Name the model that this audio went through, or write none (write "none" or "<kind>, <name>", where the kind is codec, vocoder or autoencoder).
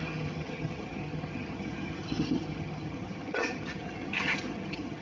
vocoder, HiFi-GAN